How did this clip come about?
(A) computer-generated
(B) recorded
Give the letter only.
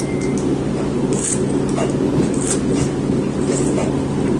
B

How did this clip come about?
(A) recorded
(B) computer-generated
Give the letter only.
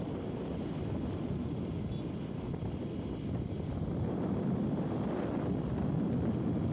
A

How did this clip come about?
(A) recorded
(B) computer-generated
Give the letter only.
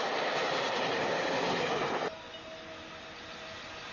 A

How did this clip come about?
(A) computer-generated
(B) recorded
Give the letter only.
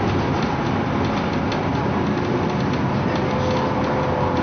B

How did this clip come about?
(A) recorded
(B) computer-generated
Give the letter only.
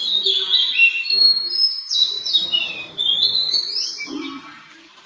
B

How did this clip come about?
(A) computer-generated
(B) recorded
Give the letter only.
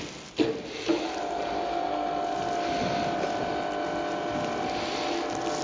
B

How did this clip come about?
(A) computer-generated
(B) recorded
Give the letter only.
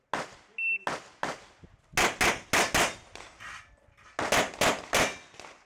B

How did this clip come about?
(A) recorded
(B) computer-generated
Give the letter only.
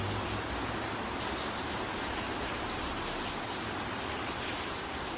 A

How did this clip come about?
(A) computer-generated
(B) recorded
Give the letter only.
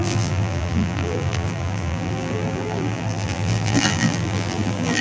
A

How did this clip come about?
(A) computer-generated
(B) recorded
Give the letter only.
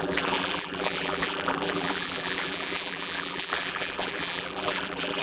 A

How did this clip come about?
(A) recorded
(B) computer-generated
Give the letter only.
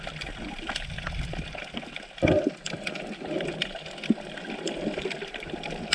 A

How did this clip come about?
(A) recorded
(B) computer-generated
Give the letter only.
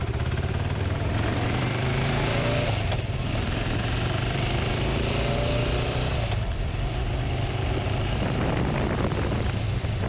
B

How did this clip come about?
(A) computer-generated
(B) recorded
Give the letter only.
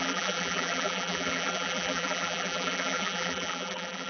A